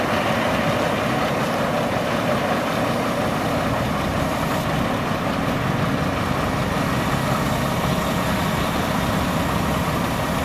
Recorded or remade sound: remade